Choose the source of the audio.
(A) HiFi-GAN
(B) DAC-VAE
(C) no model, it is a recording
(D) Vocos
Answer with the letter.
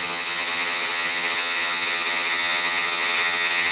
A